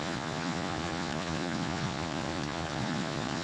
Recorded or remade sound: remade